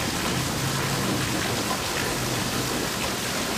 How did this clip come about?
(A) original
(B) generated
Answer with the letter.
A